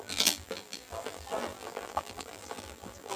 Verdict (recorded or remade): remade